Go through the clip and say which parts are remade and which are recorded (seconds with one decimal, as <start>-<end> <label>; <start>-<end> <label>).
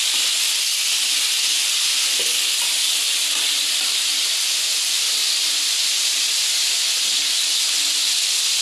0.0-8.6 recorded